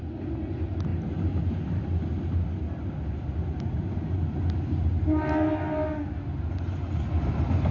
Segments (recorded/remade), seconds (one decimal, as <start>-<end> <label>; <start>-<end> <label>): 0.0-7.7 recorded

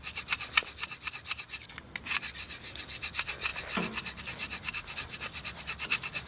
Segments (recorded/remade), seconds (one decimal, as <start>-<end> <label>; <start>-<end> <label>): 0.0-6.3 recorded

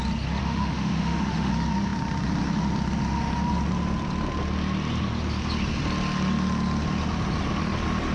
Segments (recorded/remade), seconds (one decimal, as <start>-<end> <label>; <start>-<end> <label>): 0.0-0.4 recorded; 0.4-1.5 remade; 1.5-8.1 recorded

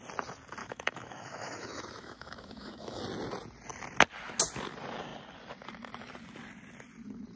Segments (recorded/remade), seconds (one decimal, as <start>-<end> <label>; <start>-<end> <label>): 0.0-0.6 recorded; 0.6-3.0 remade; 3.0-7.4 recorded

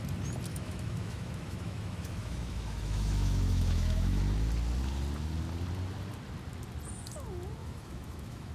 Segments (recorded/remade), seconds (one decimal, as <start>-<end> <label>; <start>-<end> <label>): 0.0-0.5 recorded; 0.5-4.2 remade; 4.2-7.6 recorded; 7.6-8.5 remade